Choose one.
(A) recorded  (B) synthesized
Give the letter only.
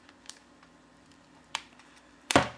B